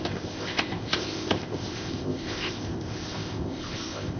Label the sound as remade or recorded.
remade